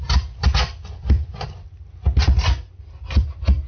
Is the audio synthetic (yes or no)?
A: no